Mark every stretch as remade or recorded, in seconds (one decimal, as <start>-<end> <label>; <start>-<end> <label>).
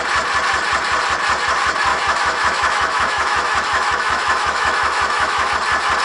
0.0-1.9 recorded; 1.9-5.5 remade; 5.5-6.0 recorded